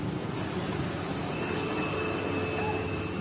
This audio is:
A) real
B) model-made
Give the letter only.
A